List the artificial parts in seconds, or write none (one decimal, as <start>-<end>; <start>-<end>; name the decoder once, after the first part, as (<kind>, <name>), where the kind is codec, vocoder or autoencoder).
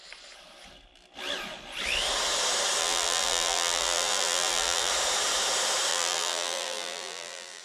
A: 2.8-4.9 (vocoder, BigVGAN v2); 5.9-7.6